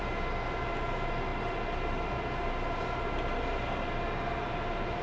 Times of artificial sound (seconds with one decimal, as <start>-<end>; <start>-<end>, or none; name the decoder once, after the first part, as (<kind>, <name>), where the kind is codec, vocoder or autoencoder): none